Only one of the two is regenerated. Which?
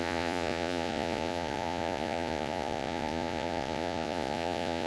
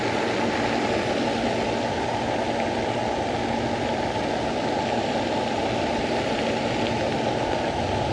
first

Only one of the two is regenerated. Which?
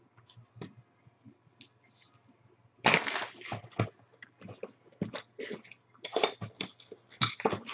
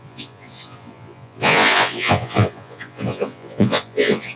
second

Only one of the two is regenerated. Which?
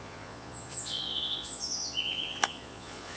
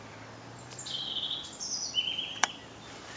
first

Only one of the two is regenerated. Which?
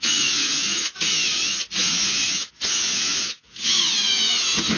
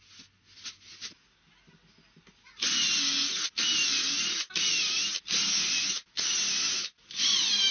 first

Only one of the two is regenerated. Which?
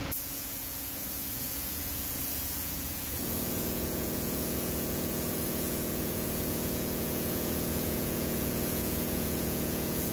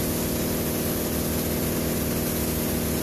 first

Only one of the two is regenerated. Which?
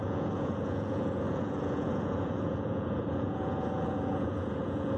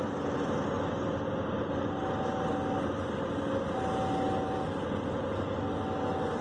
first